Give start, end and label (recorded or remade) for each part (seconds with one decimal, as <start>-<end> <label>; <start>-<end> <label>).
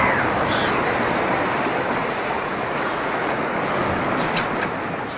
0.0-2.0 recorded; 2.0-3.5 remade; 3.5-5.2 recorded